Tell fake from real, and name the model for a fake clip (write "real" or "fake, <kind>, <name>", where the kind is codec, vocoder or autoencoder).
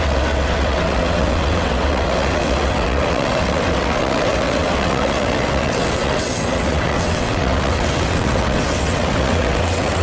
fake, vocoder, WaveNeXt